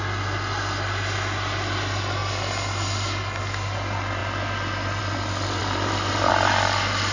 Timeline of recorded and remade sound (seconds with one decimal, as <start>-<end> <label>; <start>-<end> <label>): 0.0-5.6 recorded; 5.6-6.3 remade; 6.3-7.1 recorded